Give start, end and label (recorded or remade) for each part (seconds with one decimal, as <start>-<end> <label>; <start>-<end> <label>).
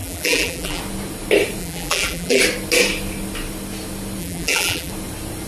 0.0-0.8 remade; 0.8-1.6 recorded; 1.6-2.4 remade; 2.4-4.2 recorded; 4.2-4.9 remade; 4.9-5.5 recorded